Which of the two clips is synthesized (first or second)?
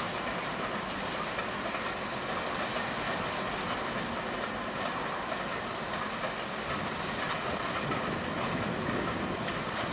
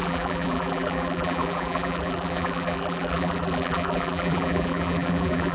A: second